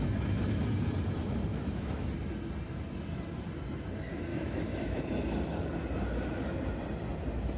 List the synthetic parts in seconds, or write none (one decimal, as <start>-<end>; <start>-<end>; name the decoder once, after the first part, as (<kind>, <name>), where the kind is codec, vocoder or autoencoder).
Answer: 1.5-2.1 (autoencoder, DAC-VAE); 4.3-5.0